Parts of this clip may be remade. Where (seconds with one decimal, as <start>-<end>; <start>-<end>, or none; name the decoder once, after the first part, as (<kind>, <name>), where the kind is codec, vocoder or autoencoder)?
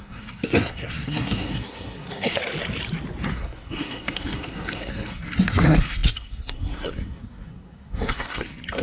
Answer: 0.0-2.4 (codec, SNAC); 3.3-8.8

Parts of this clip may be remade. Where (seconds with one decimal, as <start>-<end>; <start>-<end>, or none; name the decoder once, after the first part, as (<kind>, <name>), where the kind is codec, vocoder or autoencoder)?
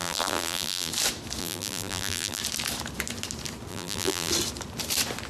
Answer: 0.0-0.9 (vocoder, BigVGAN v2); 1.4-2.4; 3.7-4.3